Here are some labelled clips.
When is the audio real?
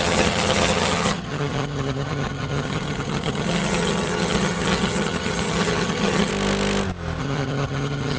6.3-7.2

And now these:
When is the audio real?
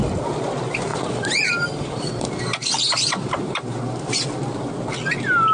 0.0-0.9; 4.2-5.5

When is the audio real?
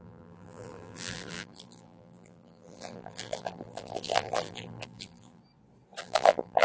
5.4-6.0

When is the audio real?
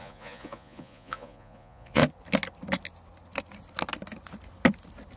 2.0-5.2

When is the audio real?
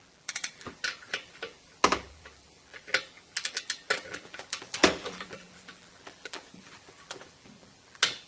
none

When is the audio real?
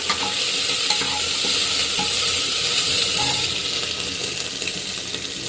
0.0-5.5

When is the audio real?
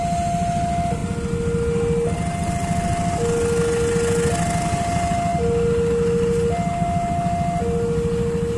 0.0-8.6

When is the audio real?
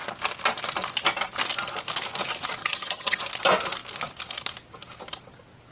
0.0-2.6; 3.2-5.7